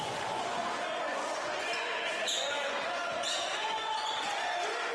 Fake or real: fake